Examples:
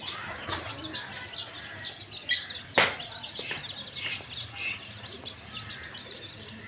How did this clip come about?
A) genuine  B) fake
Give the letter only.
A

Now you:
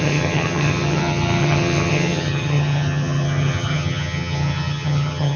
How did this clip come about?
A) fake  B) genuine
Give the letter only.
A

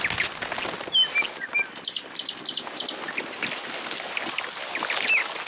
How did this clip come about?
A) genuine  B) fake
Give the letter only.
A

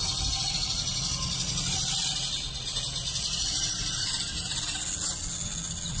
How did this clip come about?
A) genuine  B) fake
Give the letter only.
A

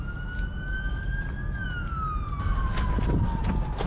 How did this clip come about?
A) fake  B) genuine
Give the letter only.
B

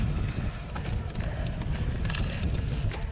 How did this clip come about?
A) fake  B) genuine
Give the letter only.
B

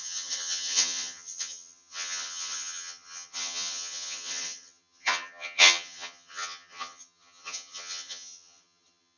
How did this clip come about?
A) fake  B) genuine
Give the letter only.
A